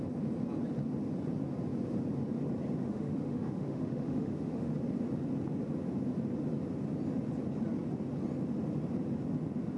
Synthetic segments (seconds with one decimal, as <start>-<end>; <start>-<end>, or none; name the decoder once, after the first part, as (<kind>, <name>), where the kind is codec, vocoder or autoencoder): 2.8-4.7 (autoencoder, DAC-VAE)